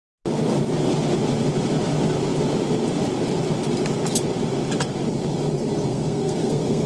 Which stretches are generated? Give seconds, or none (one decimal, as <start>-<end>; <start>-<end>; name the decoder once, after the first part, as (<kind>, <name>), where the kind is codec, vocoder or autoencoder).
5.9-6.9 (codec, SNAC)